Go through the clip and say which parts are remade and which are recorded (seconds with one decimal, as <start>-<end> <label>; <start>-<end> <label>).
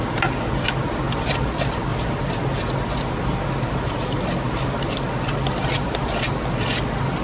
0.0-7.2 recorded